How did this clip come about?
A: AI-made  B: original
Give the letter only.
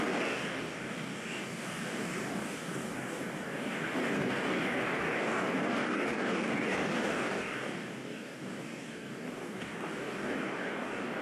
A